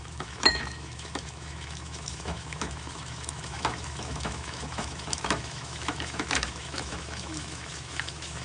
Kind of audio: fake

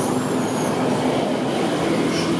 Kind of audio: real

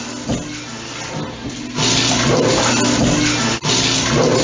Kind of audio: real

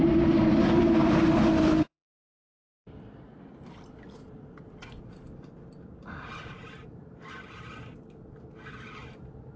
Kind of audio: fake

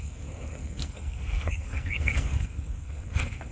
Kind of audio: fake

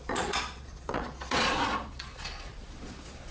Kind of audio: fake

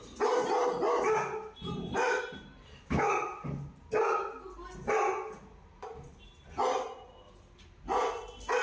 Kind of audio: real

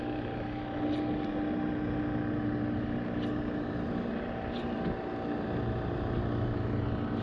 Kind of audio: real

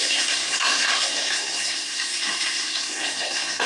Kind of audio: fake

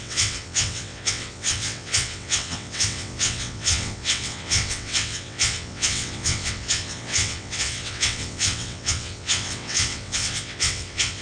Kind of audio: fake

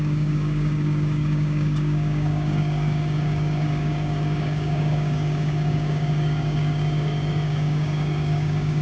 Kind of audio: fake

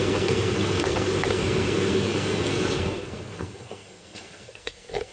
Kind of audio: fake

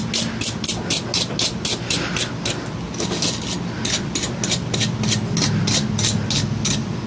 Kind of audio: real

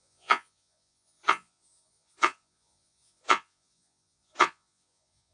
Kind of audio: fake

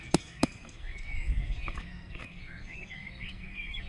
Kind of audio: fake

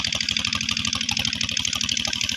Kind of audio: real